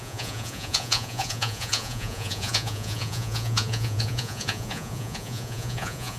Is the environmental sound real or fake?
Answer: fake